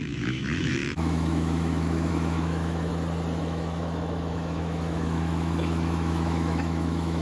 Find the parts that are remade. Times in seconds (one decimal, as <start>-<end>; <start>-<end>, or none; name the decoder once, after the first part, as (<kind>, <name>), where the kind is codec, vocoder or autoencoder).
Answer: 0.0-2.9 (autoencoder, DAC-VAE); 3.4-7.2